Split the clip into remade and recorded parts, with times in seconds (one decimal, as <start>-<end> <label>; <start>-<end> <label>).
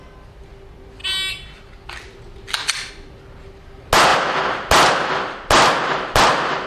0.0-6.7 recorded